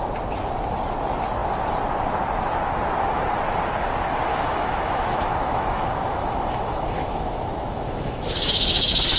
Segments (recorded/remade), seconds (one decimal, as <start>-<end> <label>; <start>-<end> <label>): 0.0-4.3 recorded; 4.3-9.2 remade